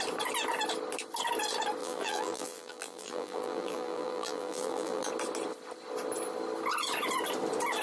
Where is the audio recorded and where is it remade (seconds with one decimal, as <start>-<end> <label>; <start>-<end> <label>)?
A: 0.0-1.8 recorded; 1.8-5.1 remade; 5.1-7.8 recorded